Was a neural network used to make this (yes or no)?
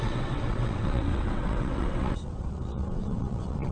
yes